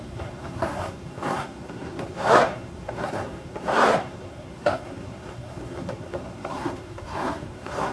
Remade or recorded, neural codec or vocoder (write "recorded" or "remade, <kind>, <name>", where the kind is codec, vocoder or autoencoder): remade, codec, SNAC